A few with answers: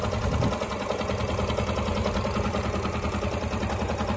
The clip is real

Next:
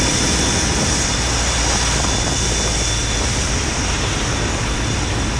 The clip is real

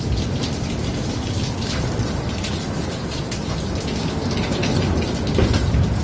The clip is real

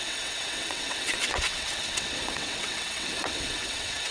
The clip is fake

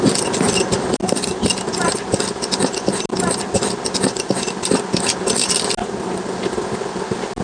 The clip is real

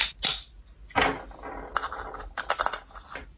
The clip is real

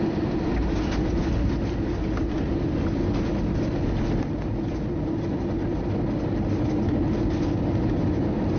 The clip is real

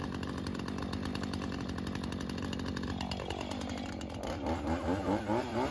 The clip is real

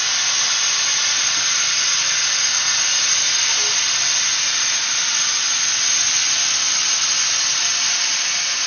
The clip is real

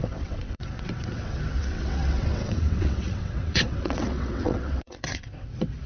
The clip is fake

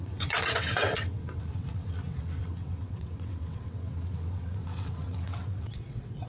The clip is fake